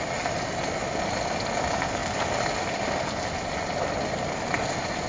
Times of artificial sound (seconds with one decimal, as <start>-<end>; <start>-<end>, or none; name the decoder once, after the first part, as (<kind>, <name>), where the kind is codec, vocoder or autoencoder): none